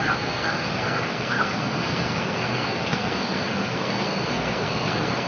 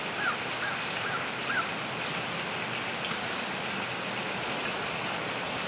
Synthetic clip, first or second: first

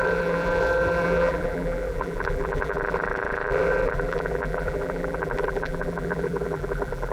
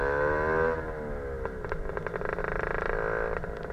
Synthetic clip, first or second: first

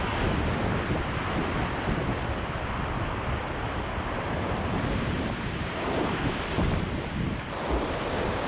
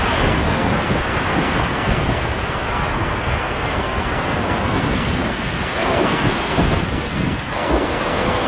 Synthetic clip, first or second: second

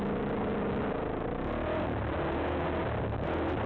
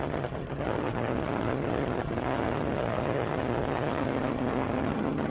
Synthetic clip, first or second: second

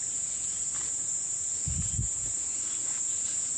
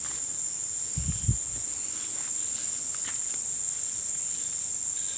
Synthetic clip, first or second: first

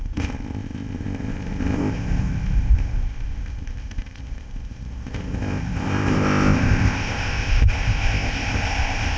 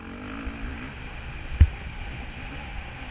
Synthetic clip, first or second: first